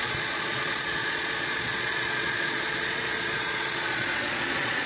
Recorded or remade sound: remade